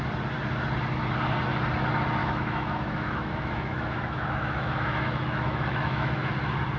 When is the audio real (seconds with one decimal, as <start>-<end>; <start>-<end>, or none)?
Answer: 0.0-2.2; 6.3-6.8